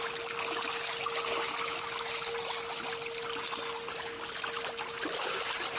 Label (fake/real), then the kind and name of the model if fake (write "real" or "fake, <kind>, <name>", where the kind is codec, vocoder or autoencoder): real